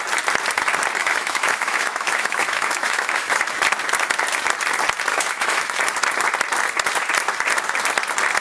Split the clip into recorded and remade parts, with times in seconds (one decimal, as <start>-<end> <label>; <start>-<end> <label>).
0.0-1.0 recorded; 1.0-3.4 remade; 3.4-5.1 recorded; 5.1-5.8 remade; 5.8-8.4 recorded